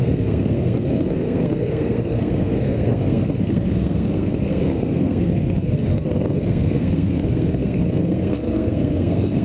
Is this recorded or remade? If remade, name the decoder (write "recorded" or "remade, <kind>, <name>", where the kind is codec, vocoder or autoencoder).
remade, codec, SNAC